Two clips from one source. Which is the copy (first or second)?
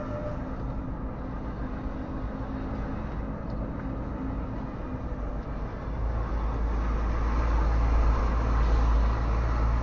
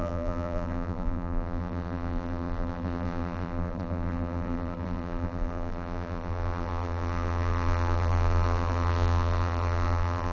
second